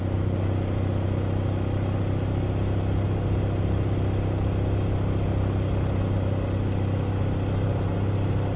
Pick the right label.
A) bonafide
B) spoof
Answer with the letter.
A